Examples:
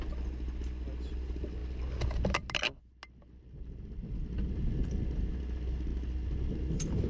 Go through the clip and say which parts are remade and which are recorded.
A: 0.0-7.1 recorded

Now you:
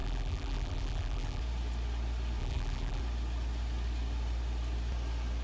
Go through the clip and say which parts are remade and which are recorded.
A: 0.0-1.4 remade; 1.4-2.4 recorded; 2.4-3.0 remade; 3.0-5.4 recorded